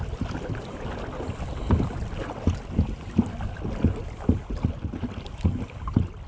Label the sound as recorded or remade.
recorded